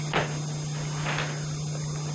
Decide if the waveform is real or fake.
real